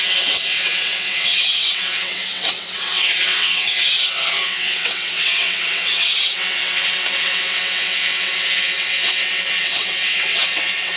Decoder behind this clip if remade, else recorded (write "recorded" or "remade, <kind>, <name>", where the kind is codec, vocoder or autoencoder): remade, vocoder, WaveNeXt